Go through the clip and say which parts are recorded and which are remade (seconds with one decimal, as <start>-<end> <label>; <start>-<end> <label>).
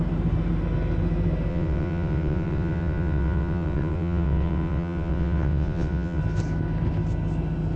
0.0-1.5 recorded; 1.5-6.2 remade; 6.2-7.8 recorded